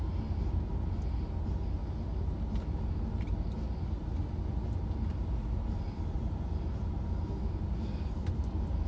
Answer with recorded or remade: recorded